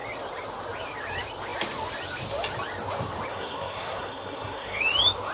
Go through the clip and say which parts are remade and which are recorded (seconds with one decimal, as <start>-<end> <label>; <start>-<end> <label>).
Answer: 0.0-3.3 recorded; 3.3-4.8 remade; 4.8-5.3 recorded